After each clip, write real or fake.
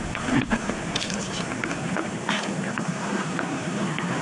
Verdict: fake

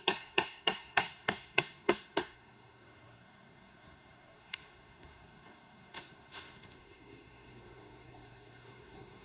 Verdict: fake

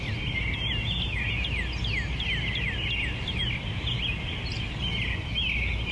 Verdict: real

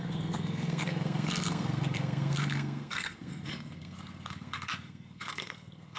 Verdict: fake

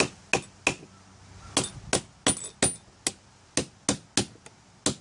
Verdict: real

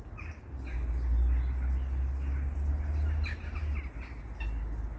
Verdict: real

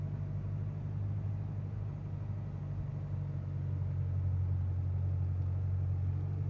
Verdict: real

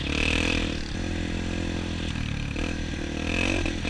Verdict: real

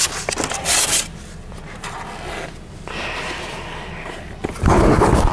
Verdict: real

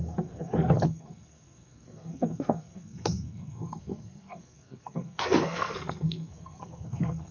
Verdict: fake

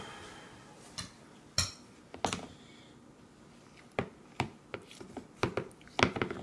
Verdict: real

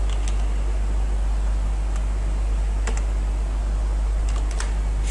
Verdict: real